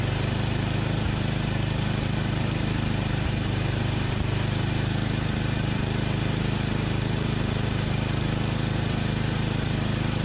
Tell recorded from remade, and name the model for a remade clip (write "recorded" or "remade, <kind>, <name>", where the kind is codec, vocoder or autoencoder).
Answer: remade, vocoder, BigVGAN v2